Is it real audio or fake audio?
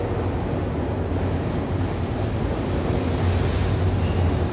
real